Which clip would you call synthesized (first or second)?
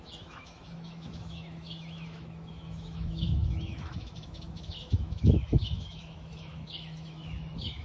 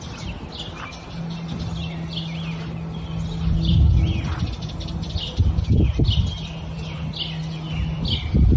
first